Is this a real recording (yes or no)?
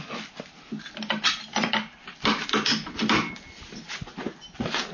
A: yes